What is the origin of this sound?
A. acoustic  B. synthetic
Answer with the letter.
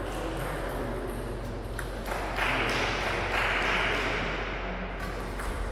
A